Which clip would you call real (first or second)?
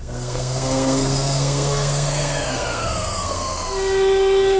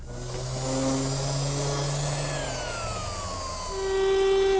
second